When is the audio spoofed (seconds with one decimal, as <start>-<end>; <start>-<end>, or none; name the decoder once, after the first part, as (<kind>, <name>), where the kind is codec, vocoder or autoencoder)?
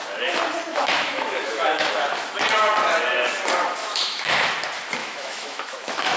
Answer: 0.7-1.9 (autoencoder, DAC-VAE); 3.8-4.5; 5.0-6.2